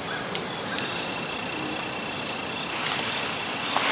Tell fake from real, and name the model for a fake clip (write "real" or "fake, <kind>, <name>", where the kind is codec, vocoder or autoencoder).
fake, vocoder, BigVGAN v2